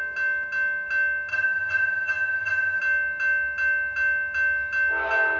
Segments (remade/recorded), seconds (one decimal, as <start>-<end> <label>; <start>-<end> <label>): 0.0-1.3 recorded; 1.3-2.8 remade; 2.8-5.4 recorded